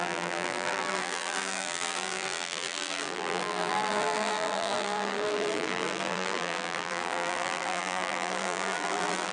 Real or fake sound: fake